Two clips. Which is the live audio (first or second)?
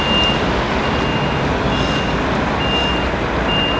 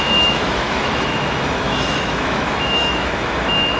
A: first